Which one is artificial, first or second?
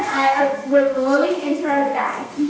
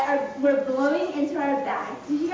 first